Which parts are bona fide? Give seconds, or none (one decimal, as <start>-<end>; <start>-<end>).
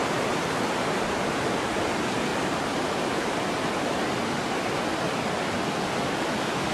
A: 0.0-6.7